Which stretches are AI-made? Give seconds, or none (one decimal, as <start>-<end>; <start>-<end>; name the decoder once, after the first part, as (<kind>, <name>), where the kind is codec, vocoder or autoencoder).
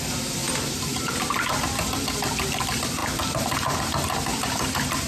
0.4-1.1 (vocoder, BigVGAN v2); 4.3-5.1